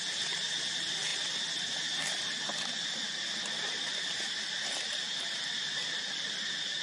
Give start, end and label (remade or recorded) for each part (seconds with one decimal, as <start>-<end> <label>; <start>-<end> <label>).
0.0-6.8 recorded